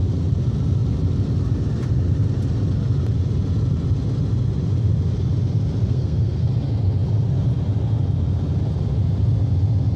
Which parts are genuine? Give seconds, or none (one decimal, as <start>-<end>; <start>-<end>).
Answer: 0.0-5.8; 6.4-10.0